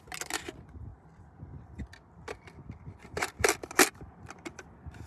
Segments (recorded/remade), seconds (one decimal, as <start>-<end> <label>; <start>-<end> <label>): 0.0-5.1 recorded